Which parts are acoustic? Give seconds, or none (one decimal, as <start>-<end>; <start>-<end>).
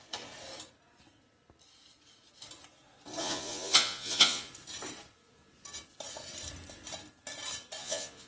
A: 0.0-3.2; 4.5-7.8